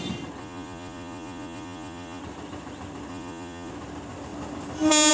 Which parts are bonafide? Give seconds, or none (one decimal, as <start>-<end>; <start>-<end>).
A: 0.0-0.4; 2.2-3.1; 3.7-5.1